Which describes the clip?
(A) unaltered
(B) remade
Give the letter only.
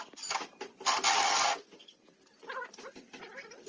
A